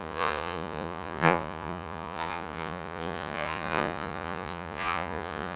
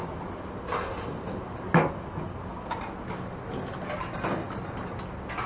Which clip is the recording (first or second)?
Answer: second